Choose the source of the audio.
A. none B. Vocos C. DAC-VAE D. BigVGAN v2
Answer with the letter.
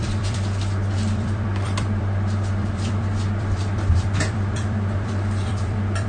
D